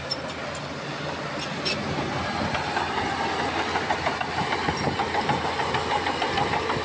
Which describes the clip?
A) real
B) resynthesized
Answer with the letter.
A